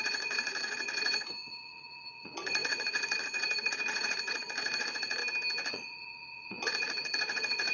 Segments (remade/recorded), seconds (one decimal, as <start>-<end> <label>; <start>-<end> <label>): 0.0-5.2 remade; 5.2-5.7 recorded; 5.7-7.7 remade